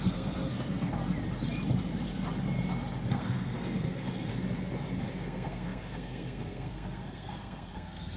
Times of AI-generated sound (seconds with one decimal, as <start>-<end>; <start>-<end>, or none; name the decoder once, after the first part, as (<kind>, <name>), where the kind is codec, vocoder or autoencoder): 0.0-1.0 (codec, SNAC); 3.1-4.3; 5.0-8.2